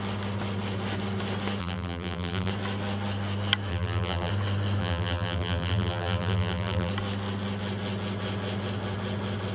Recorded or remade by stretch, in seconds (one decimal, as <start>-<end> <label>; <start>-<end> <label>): 0.0-1.6 recorded; 1.6-2.5 remade; 2.5-3.7 recorded; 3.7-4.3 remade; 4.3-4.8 recorded; 4.8-6.9 remade; 6.9-9.5 recorded

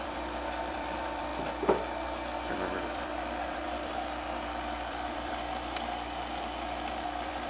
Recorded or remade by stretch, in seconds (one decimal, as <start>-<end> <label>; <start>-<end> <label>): 0.0-1.3 remade; 1.3-2.5 recorded; 2.5-7.5 remade

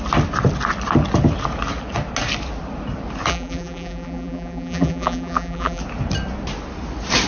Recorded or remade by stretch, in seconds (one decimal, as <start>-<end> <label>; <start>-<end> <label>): 0.0-3.3 recorded; 3.3-5.8 remade; 5.8-7.3 recorded

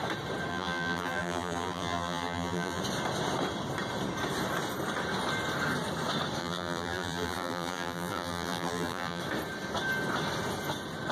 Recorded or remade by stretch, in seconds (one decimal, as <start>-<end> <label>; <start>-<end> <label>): 0.0-0.5 recorded; 0.5-2.8 remade; 2.8-6.4 recorded; 6.4-9.2 remade; 9.2-11.1 recorded